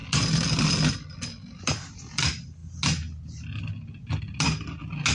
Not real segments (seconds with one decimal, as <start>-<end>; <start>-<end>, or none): none

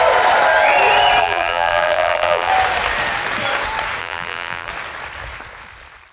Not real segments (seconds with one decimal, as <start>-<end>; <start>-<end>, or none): 1.2-2.5; 4.0-4.7

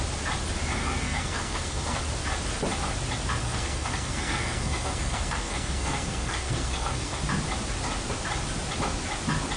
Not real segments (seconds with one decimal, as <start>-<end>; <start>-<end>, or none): 0.8-2.0; 3.4-7.2

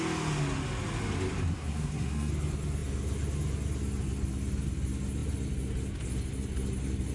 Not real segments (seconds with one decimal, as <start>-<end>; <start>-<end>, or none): 1.5-2.3

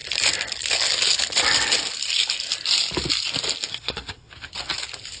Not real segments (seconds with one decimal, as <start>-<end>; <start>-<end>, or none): 3.7-4.3

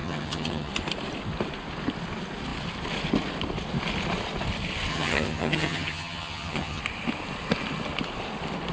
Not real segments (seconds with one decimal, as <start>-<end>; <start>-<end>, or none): 0.0-0.7; 4.9-6.8